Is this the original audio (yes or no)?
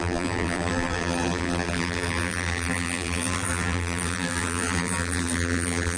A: no